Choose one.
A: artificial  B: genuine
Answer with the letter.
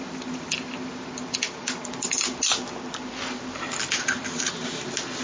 B